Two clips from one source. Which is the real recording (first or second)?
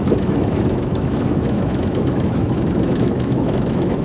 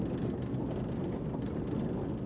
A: second